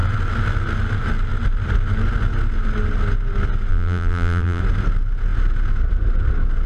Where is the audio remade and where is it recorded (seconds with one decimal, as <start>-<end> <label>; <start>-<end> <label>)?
0.0-3.7 recorded; 3.7-4.6 remade; 4.6-6.7 recorded